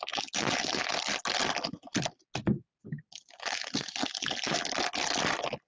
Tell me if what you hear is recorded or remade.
recorded